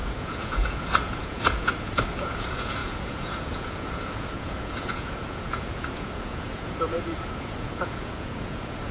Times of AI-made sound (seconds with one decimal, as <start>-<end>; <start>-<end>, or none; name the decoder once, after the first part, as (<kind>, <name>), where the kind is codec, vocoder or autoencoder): 0.0-8.9 (vocoder, Vocos)